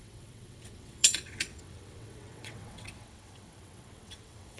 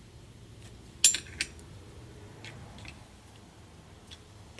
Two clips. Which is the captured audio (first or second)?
second